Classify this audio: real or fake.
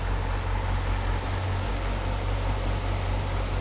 real